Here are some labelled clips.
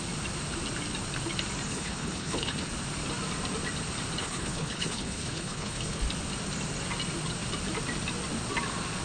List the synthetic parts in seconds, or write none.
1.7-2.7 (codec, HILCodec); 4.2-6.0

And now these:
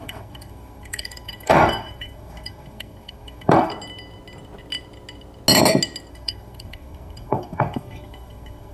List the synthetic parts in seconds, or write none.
0.0-3.7 (codec, SNAC); 6.1-8.7

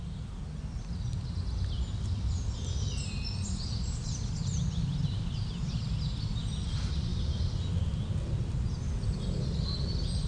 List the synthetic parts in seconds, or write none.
none

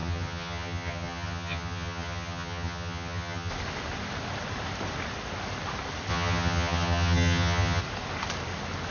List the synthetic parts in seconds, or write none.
0.0-3.5 (vocoder, HiFi-GAN); 6.1-7.8